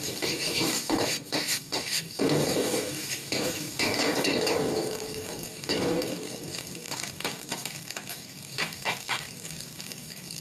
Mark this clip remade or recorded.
remade